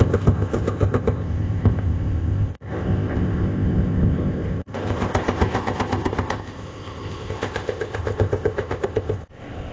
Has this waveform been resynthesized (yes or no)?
yes